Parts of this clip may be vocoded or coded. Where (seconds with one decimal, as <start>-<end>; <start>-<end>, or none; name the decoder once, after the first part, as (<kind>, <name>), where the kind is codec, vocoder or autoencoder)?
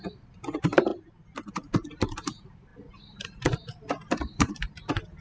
0.0-0.9 (vocoder, BigVGAN v2); 1.5-5.2